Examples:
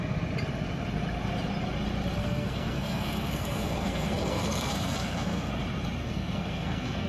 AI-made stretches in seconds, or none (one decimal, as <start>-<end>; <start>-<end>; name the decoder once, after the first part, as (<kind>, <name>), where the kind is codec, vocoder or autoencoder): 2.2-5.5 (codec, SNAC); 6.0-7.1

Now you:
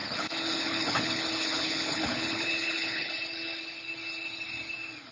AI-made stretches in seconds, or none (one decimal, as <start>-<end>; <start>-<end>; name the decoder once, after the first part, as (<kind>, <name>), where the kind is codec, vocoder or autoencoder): 0.0-3.1 (codec, HILCodec)

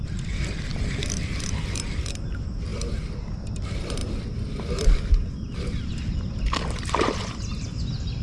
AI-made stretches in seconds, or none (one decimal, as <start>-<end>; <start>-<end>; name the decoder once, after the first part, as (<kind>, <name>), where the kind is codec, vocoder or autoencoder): none

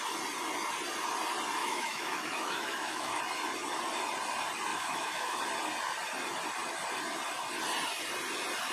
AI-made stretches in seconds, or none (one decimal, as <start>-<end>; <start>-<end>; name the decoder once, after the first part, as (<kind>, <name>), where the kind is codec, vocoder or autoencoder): 1.6-3.2 (autoencoder, DAC-VAE); 4.7-5.4

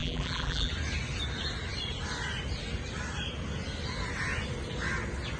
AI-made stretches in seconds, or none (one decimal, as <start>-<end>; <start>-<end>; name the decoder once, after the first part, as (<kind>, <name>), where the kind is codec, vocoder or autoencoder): 0.0-0.7 (vocoder, BigVGAN v2)

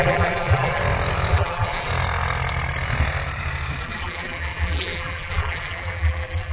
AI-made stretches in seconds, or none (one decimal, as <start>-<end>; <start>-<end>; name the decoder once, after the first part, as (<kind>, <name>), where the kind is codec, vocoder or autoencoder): 0.0-0.8 (vocoder, BigVGAN v2); 1.3-1.9; 3.8-6.5

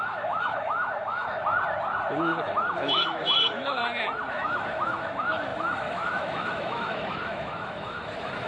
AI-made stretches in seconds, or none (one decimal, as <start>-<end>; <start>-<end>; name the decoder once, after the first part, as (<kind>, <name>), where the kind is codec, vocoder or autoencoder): 0.0-1.4 (autoencoder, DAC-VAE); 2.2-3.8; 4.3-8.5

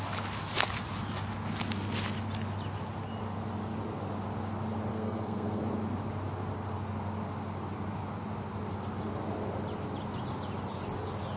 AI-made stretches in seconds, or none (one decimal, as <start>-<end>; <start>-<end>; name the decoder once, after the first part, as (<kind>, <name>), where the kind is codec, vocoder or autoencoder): 4.9-5.6 (codec, SNAC)